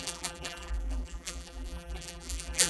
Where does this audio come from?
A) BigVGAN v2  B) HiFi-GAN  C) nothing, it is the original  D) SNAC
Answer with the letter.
A